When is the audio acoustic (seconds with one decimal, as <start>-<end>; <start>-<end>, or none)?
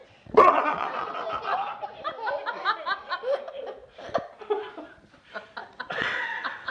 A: 1.1-5.6